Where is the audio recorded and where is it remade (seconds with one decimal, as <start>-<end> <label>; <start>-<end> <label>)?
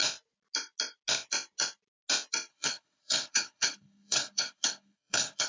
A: 0.0-2.5 recorded; 2.5-5.5 remade